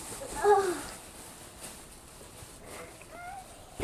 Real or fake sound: real